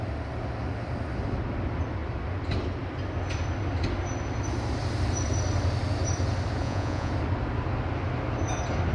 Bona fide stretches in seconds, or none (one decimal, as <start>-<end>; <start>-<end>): 0.0-6.6; 7.1-8.9